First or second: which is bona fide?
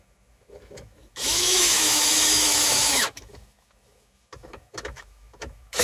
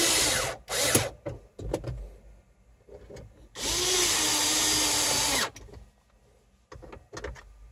second